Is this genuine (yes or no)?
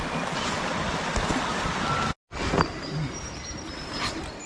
yes